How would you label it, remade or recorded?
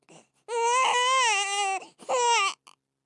recorded